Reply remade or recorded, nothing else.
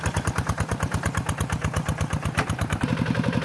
remade